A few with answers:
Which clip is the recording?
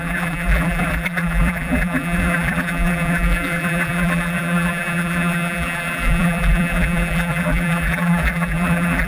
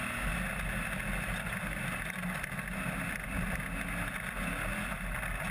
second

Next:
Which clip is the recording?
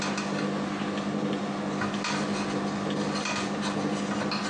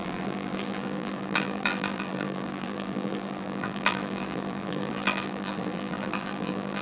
first